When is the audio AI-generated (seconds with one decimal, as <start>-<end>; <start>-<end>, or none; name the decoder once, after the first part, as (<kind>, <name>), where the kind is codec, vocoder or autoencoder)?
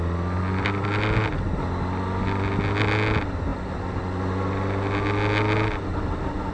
none